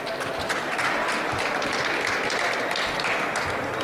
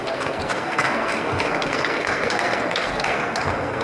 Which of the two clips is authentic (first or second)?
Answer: first